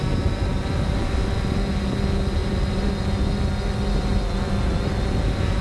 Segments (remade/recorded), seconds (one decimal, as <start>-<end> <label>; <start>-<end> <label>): 0.0-2.4 recorded; 2.4-2.9 remade; 2.9-5.6 recorded